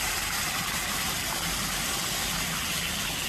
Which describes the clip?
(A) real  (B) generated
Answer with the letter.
A